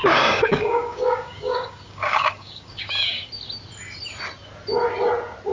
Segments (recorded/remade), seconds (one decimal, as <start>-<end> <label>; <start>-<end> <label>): 0.0-3.3 remade; 3.3-5.5 recorded